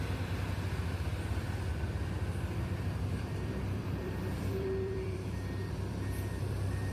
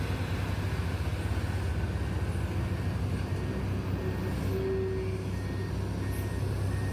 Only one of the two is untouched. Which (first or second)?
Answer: second